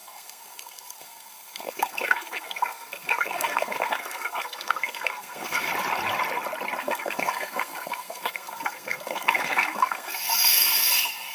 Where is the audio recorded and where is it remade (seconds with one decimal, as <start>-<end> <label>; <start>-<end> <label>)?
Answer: 0.0-5.7 remade; 5.7-6.8 recorded; 6.8-11.3 remade